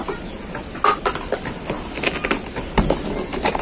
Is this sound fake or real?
real